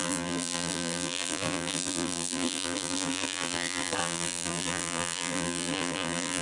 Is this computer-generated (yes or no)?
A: yes